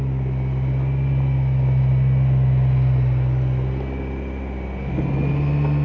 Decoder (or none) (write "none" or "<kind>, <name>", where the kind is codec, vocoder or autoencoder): none